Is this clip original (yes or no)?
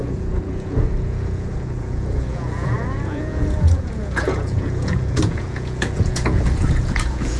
no